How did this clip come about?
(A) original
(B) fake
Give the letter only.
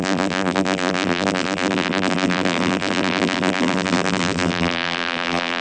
B